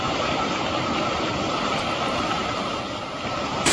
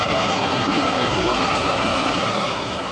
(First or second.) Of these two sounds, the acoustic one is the first